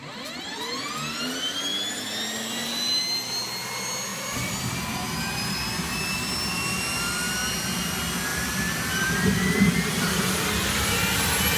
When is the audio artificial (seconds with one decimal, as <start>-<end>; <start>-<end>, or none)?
4.1-4.8; 8.3-10.7